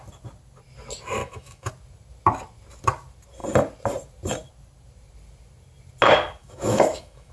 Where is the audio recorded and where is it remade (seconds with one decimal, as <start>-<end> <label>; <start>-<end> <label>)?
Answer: 0.0-1.2 recorded; 1.2-1.7 remade; 1.7-6.4 recorded; 6.4-7.3 remade